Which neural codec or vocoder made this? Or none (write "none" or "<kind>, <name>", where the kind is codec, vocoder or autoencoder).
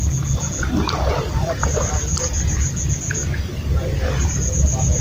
none